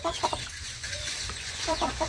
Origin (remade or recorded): remade